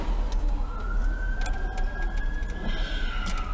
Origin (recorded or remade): recorded